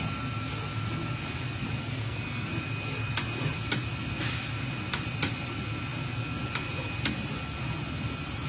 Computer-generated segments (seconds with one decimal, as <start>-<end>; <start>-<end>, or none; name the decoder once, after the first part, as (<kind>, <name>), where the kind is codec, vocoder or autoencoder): 1.8-2.5 (codec, SNAC)

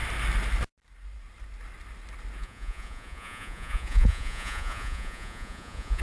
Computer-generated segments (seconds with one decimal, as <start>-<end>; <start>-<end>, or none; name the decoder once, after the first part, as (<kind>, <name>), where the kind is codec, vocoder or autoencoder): 2.4-6.0 (vocoder, Vocos)